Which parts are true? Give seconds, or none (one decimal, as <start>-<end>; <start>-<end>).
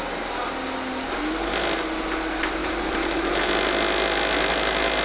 0.0-2.6; 3.5-5.0